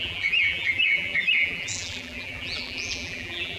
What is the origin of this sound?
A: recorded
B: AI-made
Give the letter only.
B